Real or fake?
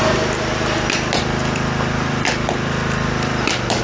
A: fake